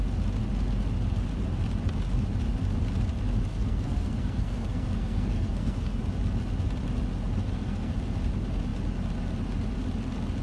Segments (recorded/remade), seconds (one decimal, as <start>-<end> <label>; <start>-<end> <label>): 0.0-3.5 recorded; 3.5-6.0 remade; 6.0-7.4 recorded; 7.4-7.9 remade; 7.9-10.4 recorded